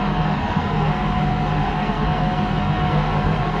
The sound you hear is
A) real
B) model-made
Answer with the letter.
B